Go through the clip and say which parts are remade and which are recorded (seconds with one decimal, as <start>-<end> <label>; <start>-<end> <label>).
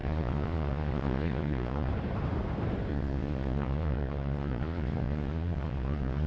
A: 0.0-1.9 remade; 1.9-2.9 recorded; 2.9-6.3 remade